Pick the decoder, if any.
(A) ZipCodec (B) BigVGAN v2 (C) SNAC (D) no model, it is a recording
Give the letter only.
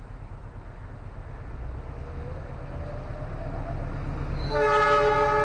D